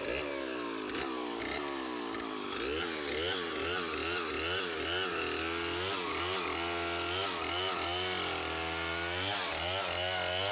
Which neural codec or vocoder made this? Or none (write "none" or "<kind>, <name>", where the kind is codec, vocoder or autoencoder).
none